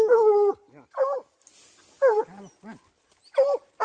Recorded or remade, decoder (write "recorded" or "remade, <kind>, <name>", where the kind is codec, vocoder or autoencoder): recorded